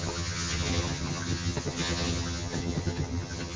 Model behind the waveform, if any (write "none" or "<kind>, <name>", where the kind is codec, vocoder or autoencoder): vocoder, HiFi-GAN